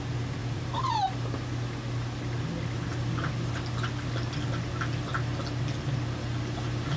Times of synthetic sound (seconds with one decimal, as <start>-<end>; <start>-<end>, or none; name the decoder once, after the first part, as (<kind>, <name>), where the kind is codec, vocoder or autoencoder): 0.4-1.1 (vocoder, BigVGAN v2)

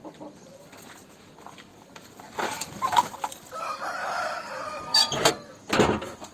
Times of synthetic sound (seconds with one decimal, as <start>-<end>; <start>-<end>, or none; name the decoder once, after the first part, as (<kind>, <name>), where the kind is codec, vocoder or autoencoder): 1.7-5.3 (vocoder, BigVGAN v2)